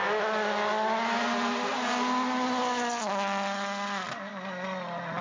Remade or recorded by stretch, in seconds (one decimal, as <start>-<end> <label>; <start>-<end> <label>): 0.0-5.2 recorded